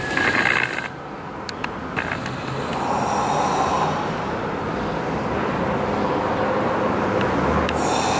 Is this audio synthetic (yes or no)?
no